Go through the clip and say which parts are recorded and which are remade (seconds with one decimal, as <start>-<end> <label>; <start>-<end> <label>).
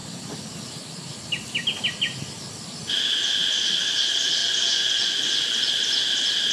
0.0-4.4 recorded; 4.4-5.7 remade; 5.7-6.5 recorded